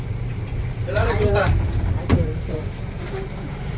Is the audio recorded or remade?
remade